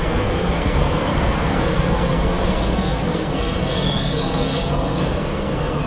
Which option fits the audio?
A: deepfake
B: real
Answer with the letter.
A